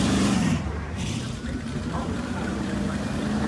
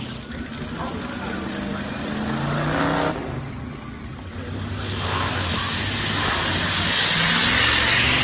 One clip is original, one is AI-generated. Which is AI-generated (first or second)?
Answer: first